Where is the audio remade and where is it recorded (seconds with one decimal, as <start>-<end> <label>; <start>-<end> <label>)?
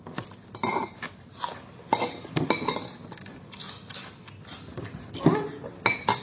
0.0-0.8 recorded; 0.8-1.3 remade; 1.3-6.2 recorded